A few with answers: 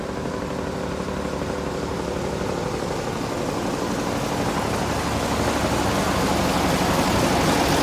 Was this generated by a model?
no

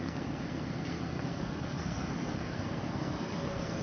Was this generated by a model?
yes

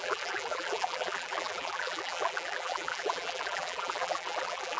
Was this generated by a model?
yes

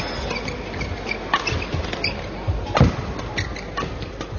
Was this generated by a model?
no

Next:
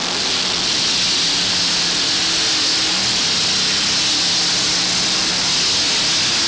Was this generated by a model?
no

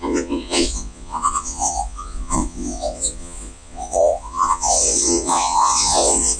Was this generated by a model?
yes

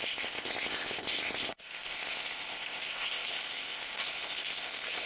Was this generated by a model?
yes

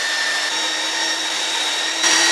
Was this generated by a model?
yes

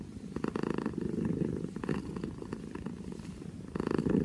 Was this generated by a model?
no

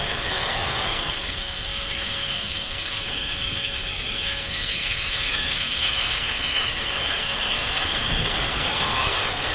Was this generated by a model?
yes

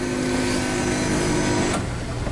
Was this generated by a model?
no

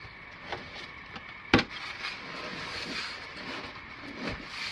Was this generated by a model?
no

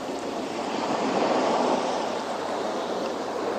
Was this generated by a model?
yes